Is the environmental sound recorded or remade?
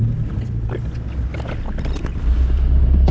recorded